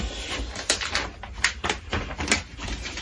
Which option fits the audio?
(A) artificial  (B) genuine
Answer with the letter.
B